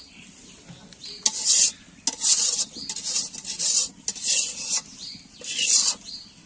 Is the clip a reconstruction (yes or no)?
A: no